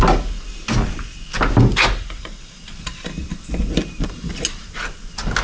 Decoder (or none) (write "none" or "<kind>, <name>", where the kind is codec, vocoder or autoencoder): none